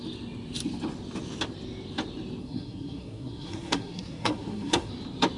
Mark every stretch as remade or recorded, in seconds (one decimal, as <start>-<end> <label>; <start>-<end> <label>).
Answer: 0.0-2.4 recorded; 2.4-4.9 remade; 4.9-5.4 recorded